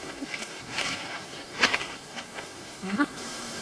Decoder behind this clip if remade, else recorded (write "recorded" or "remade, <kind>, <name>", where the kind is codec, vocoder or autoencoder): remade, codec, SNAC